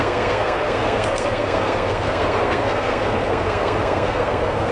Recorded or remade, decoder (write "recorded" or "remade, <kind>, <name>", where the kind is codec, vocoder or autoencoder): remade, codec, SNAC